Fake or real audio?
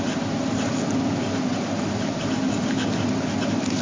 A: real